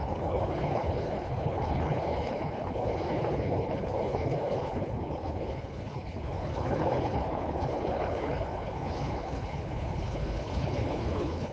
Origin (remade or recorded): remade